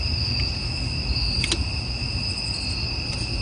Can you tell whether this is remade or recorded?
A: recorded